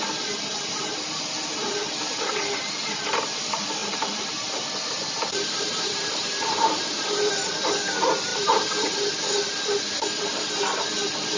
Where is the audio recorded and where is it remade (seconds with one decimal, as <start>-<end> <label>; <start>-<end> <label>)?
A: 0.0-0.5 recorded; 0.5-2.4 remade; 2.4-3.8 recorded; 3.8-7.3 remade; 7.3-8.3 recorded; 8.3-8.9 remade; 8.9-11.4 recorded